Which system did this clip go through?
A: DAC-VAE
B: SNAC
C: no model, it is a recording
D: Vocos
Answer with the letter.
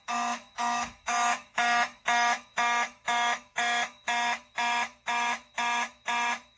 A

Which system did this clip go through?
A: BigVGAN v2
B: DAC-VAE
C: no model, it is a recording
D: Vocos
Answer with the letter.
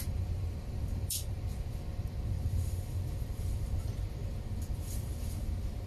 A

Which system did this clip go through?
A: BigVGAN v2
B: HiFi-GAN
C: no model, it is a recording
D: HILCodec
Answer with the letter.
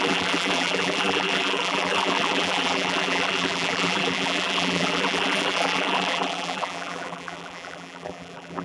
A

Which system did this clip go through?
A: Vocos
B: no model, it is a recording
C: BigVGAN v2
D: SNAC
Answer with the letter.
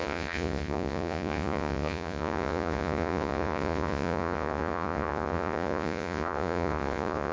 A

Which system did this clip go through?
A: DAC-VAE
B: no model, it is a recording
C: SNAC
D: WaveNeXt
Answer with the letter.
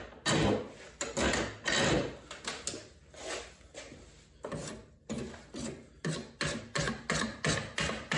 B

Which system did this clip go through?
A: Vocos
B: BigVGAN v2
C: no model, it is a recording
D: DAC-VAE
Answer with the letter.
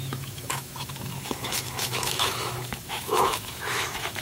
D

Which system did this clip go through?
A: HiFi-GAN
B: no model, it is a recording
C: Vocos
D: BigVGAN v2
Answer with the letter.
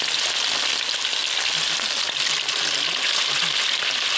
B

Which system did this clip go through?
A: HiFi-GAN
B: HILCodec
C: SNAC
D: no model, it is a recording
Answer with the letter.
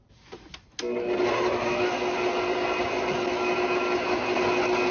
D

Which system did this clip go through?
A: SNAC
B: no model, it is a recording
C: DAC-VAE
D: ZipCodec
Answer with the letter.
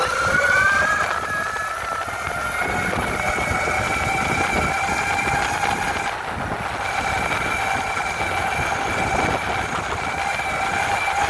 B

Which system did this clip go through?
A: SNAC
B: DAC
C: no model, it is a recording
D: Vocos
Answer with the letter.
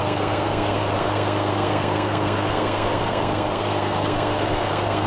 A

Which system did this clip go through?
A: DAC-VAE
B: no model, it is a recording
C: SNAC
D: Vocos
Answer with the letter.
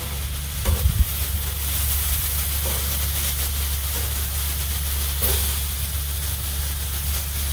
B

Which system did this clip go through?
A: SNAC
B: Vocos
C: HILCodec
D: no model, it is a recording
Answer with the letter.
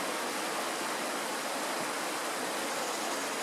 D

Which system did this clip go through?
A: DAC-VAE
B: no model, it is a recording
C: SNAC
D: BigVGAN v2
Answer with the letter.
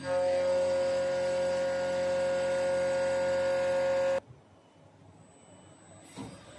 B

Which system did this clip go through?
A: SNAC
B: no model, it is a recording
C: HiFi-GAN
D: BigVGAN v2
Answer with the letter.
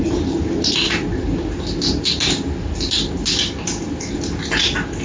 B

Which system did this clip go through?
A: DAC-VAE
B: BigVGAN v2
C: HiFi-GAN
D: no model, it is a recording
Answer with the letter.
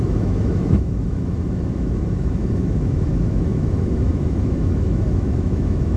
A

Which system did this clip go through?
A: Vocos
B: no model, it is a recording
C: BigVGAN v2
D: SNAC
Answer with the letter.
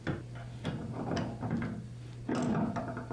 B